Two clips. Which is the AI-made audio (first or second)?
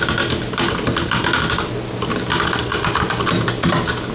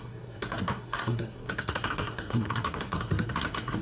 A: second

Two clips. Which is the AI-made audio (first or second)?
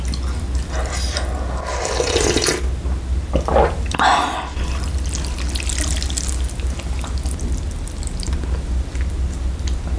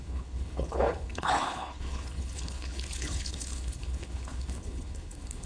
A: second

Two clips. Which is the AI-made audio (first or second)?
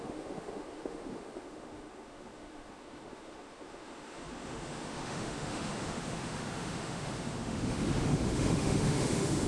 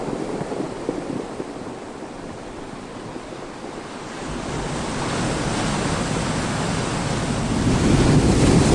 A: first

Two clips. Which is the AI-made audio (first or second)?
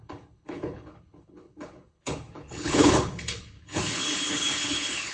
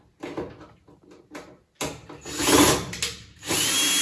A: first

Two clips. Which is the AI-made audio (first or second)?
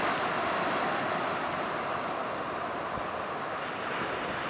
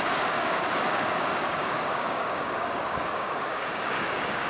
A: second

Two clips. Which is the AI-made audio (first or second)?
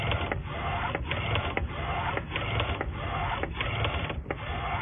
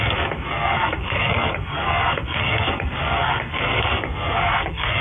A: second